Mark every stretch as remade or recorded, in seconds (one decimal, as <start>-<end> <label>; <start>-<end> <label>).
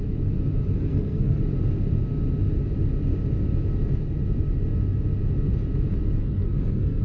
0.0-0.8 recorded; 0.8-1.4 remade; 1.4-6.2 recorded; 6.2-7.0 remade